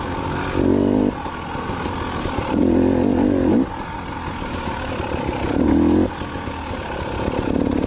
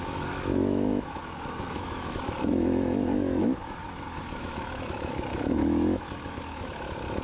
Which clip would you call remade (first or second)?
second